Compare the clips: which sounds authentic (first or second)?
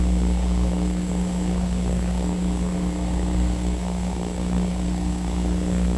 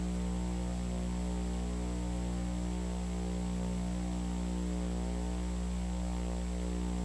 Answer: second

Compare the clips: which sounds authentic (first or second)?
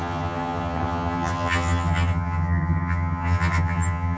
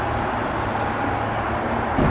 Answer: second